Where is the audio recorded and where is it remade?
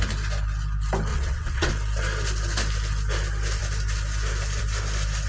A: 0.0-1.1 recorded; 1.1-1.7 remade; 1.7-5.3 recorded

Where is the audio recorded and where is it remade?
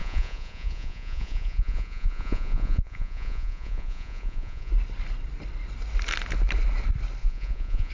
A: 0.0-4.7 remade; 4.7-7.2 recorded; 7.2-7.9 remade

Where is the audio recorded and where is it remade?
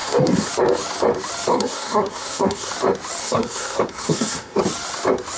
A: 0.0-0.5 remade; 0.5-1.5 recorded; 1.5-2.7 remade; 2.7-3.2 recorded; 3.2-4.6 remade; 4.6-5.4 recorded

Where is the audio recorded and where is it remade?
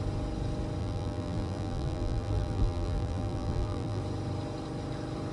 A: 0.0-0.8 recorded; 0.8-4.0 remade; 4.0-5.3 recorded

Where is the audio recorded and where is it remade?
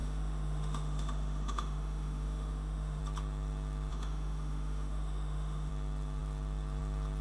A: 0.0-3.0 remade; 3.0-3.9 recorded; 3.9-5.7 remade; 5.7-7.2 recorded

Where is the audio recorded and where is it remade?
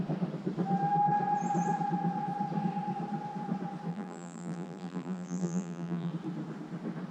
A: 0.0-3.9 recorded; 3.9-6.1 remade; 6.1-7.1 recorded